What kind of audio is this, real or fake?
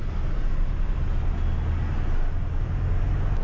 real